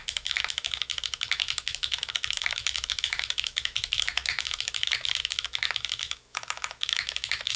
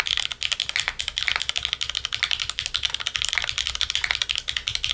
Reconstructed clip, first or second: first